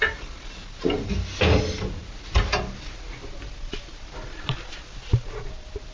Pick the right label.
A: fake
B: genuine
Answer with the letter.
B